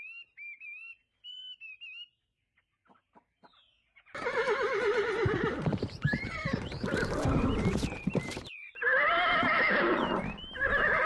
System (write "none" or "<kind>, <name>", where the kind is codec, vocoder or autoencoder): vocoder, BigVGAN v2